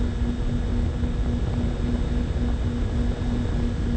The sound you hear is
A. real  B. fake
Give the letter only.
A